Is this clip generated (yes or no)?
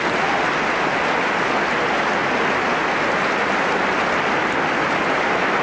no